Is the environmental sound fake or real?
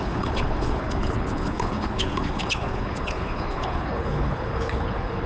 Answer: fake